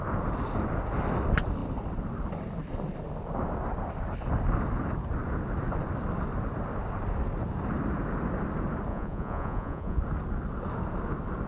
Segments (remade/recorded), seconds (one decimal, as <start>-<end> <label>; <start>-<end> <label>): 0.0-8.9 recorded; 8.9-10.0 remade; 10.0-11.5 recorded